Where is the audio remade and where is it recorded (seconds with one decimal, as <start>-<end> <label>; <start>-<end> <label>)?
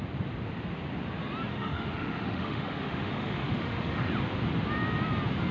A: 0.0-1.5 recorded; 1.5-4.1 remade; 4.1-5.5 recorded